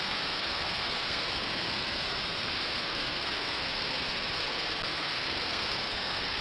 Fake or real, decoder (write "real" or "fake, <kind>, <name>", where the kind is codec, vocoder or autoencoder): fake, codec, SNAC